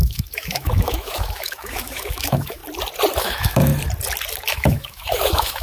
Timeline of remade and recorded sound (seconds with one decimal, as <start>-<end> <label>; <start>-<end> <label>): 0.0-2.6 remade; 2.6-3.2 recorded; 3.2-3.7 remade; 3.7-4.5 recorded; 4.5-5.6 remade